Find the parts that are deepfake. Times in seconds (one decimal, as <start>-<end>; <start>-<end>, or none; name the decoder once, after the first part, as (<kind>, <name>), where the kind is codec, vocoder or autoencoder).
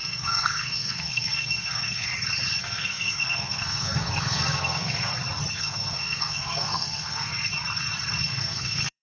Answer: 0.0-2.1 (codec, SNAC); 2.6-5.1; 5.6-7.3; 8.3-9.0